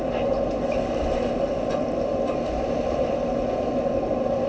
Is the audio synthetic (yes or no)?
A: no